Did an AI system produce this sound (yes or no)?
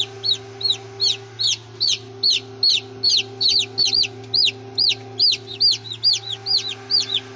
no